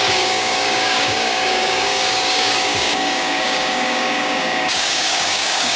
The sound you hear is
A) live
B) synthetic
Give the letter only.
B